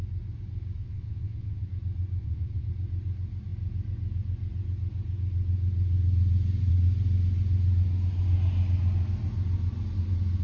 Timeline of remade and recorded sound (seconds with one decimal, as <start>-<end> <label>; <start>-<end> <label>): 0.0-0.8 recorded; 0.8-1.7 remade; 1.7-2.2 recorded; 2.2-2.7 remade; 2.7-10.4 recorded